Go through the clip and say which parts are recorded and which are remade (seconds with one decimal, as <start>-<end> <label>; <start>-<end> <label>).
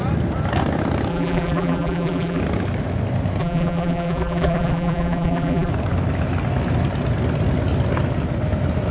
0.0-1.1 recorded; 1.1-2.4 remade; 2.4-3.4 recorded; 3.4-5.7 remade; 5.7-8.9 recorded